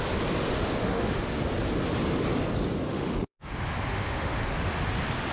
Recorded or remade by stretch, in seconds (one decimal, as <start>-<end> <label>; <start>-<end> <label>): 0.0-0.8 recorded; 0.8-1.3 remade; 1.3-2.9 recorded; 2.9-3.5 remade; 3.5-3.9 recorded; 3.9-4.4 remade; 4.4-5.3 recorded